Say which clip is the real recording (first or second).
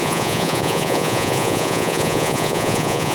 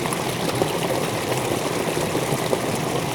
second